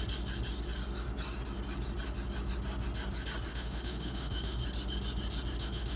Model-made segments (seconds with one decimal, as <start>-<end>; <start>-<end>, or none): 3.5-4.6; 5.6-6.0